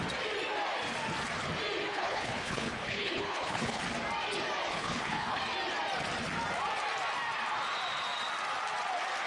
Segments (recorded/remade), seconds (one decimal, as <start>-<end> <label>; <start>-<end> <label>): 0.0-1.9 recorded; 1.9-3.8 remade; 3.8-4.7 recorded; 4.7-5.4 remade; 5.4-9.3 recorded